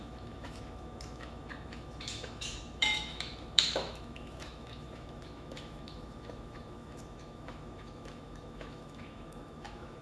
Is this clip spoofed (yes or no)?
yes